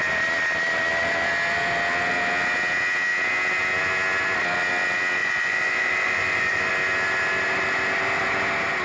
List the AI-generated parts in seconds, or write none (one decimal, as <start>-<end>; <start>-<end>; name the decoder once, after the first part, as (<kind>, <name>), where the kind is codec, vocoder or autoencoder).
5.2-6.7 (vocoder, Vocos)